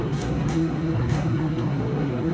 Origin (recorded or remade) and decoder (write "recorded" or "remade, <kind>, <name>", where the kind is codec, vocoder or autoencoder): remade, codec, SNAC